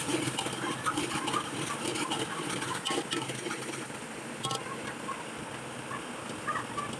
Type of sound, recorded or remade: recorded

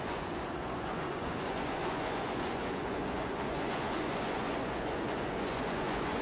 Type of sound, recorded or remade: remade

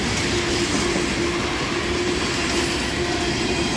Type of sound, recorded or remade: recorded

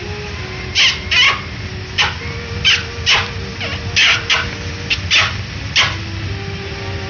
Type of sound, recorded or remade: recorded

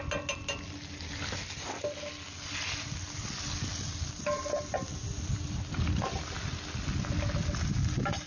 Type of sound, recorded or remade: recorded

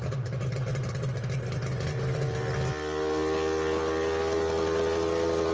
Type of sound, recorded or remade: recorded